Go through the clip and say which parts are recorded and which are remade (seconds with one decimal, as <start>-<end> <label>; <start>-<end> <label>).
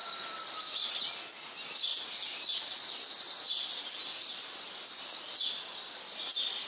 0.0-6.7 recorded